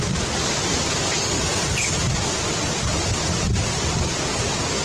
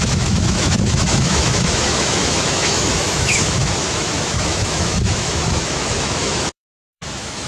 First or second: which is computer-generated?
second